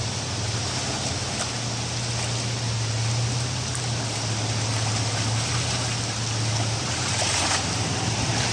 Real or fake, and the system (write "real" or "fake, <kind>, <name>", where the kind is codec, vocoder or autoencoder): real